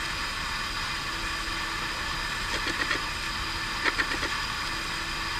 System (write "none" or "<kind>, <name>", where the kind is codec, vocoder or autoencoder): none